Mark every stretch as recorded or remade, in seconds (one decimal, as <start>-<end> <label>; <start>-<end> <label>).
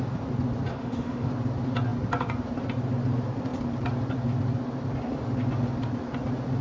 0.0-0.7 recorded; 0.7-1.3 remade; 1.3-6.6 recorded